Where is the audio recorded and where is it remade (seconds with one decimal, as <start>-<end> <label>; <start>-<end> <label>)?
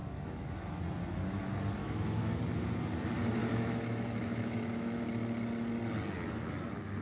0.0-0.8 remade; 0.8-1.8 recorded; 1.8-2.4 remade; 2.4-3.4 recorded; 3.4-5.0 remade; 5.0-7.0 recorded